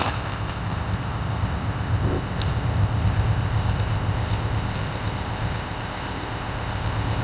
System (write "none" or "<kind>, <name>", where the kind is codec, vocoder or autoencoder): codec, ZipCodec